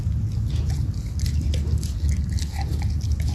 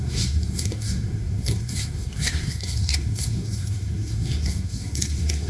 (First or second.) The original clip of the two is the first